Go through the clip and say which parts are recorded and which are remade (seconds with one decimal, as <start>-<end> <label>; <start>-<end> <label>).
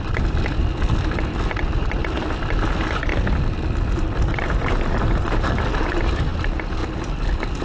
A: 0.0-7.6 recorded